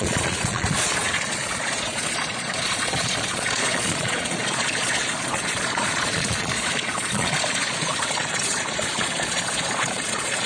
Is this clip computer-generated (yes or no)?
yes